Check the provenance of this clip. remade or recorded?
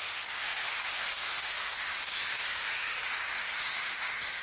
remade